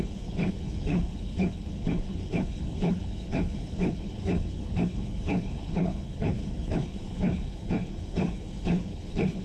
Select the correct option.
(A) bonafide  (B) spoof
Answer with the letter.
B